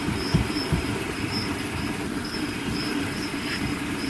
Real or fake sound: fake